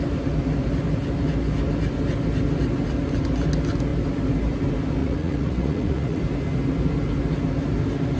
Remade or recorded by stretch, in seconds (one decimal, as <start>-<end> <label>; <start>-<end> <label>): 0.0-5.0 recorded; 5.0-6.2 remade; 6.2-8.2 recorded